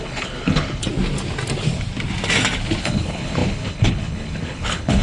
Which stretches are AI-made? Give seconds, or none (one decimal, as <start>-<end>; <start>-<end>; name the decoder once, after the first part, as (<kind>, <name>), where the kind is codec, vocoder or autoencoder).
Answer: 0.0-0.8 (codec, HILCodec); 2.8-5.0

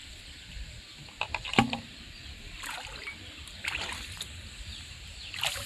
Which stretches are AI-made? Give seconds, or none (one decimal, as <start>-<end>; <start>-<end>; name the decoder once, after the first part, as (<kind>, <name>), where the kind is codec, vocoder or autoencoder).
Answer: 1.5-4.8 (vocoder, BigVGAN v2)

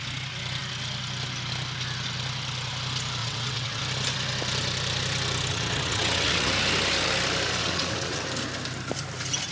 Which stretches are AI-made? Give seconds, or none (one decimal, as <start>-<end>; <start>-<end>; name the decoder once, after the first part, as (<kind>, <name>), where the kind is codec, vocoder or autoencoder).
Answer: 3.2-3.8 (vocoder, WaveNeXt); 5.5-6.5; 7.6-8.2